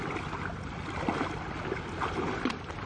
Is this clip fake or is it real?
real